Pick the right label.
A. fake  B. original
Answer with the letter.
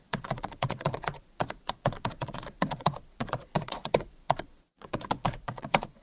A